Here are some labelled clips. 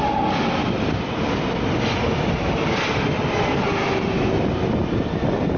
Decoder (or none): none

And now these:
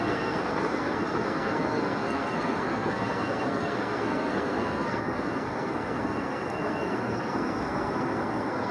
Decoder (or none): codec, SNAC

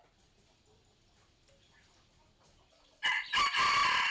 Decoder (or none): none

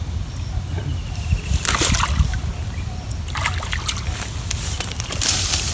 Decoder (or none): none